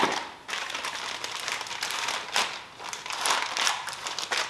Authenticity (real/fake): real